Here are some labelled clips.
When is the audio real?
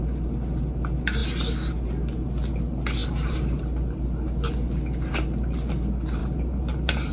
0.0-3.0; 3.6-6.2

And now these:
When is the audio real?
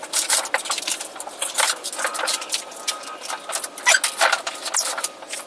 0.0-5.5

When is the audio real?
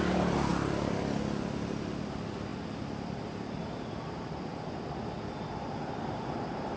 0.5-2.0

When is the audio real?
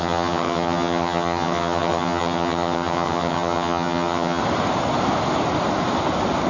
4.4-6.5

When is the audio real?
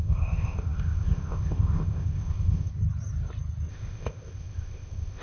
2.7-3.7